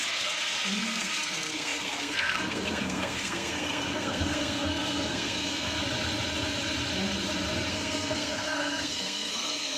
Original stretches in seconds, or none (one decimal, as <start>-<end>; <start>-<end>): 5.8-7.7